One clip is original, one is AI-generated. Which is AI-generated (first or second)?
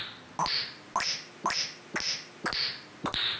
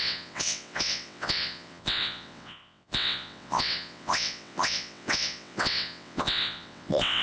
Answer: second